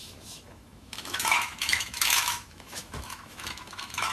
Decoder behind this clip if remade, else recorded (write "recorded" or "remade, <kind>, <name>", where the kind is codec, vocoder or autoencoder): remade, autoencoder, DAC-VAE